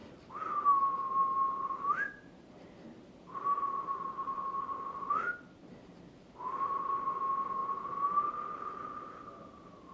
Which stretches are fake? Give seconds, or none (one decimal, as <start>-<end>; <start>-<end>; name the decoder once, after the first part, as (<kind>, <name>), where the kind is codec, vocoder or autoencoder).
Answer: none